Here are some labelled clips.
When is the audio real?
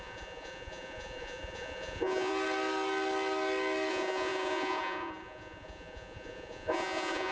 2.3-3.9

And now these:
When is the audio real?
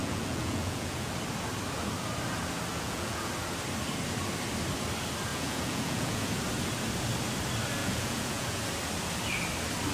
1.1-2.7; 3.3-5.3; 6.4-7.8; 8.6-9.9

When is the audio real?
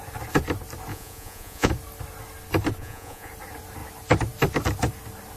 0.0-0.9; 1.7-2.8; 3.3-5.4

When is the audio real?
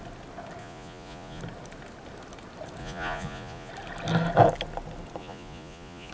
0.0-0.6; 1.4-2.8; 3.7-5.2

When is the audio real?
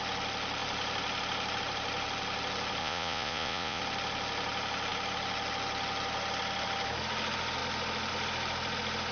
0.0-2.8; 3.8-9.1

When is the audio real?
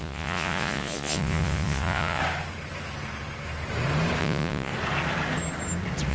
2.2-4.2; 4.7-6.1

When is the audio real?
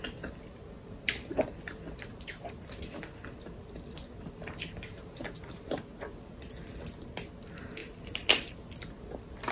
0.0-9.5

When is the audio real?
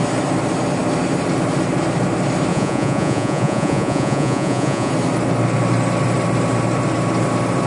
0.0-2.5; 4.9-7.7